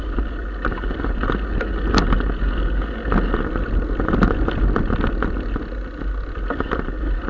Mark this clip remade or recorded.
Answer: recorded